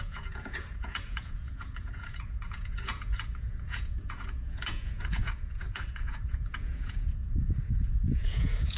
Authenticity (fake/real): fake